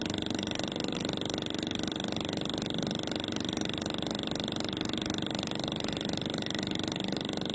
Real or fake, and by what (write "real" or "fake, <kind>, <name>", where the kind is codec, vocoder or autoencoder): real